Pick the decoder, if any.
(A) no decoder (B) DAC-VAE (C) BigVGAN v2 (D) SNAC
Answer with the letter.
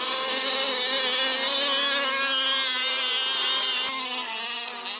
A